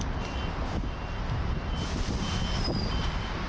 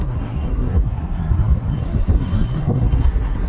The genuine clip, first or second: first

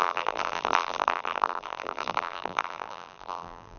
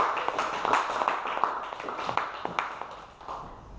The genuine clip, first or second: second